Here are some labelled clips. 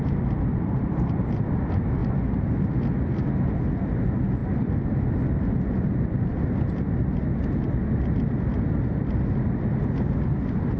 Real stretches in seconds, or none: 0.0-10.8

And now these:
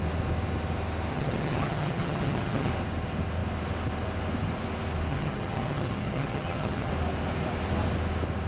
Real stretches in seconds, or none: 0.0-1.1; 2.7-5.1; 6.9-8.5

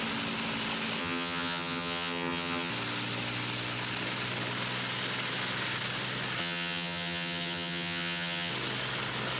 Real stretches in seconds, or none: 0.0-1.0; 2.7-6.4; 8.5-9.4

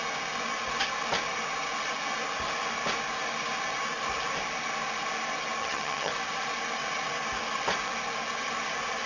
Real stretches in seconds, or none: 0.0-5.6; 6.1-9.1

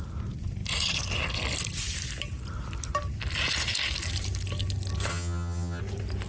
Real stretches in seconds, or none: 0.0-5.1; 5.8-6.3

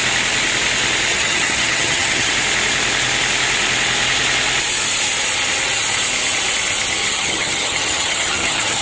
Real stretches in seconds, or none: 0.0-1.1; 2.3-7.0

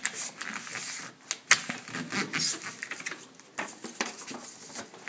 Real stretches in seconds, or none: 0.0-5.1